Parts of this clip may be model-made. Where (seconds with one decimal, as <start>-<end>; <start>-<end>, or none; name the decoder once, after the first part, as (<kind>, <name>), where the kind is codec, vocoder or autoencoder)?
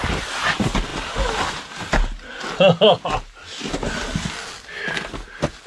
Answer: none